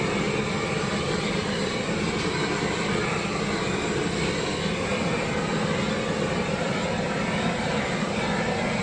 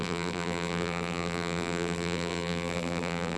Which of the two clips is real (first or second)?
first